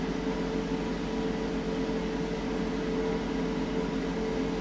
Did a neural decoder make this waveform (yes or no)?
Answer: no